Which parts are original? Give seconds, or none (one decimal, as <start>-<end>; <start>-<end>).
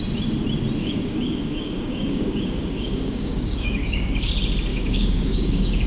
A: 0.0-0.8; 4.3-4.7